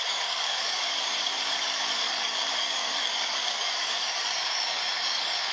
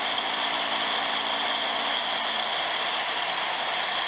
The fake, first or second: first